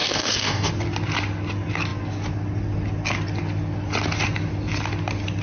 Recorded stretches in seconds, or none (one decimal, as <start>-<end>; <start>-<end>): 0.7-5.4